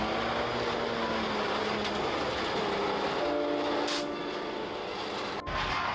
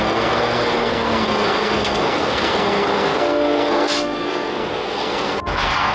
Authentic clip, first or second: first